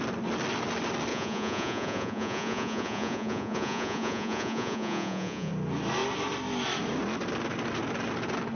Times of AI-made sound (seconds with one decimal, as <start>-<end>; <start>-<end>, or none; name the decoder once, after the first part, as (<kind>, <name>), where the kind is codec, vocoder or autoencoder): 1.1-5.5 (vocoder, Vocos)